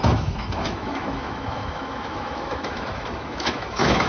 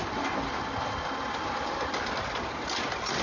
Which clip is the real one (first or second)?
second